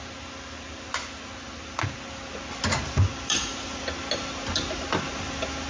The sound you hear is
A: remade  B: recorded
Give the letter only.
B